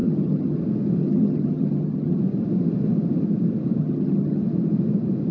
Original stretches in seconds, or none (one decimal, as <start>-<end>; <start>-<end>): 0.6-1.0; 2.2-3.8; 4.4-5.3